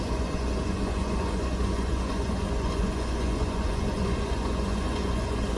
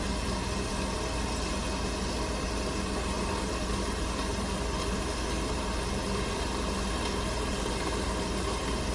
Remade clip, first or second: first